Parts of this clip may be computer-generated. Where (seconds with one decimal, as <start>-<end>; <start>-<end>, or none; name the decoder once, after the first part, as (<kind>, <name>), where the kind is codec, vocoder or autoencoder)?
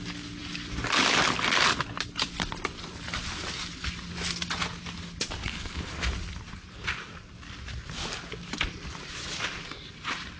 5.4-5.9 (codec, HILCodec)